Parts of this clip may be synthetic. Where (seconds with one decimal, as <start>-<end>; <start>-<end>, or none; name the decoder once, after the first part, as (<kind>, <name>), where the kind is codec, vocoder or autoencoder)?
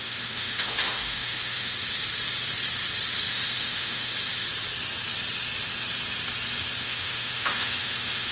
0.0-1.7 (autoencoder, DAC-VAE); 3.3-4.1; 6.8-8.3